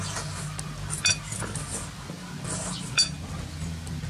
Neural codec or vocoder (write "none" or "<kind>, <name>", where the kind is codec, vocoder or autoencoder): none